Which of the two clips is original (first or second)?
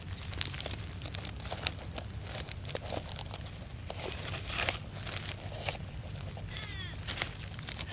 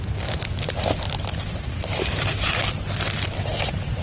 first